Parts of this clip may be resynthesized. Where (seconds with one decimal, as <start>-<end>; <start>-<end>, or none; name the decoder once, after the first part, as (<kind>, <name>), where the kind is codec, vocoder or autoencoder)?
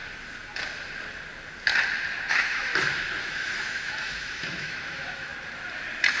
2.3-2.7 (autoencoder, DAC-VAE); 3.2-5.3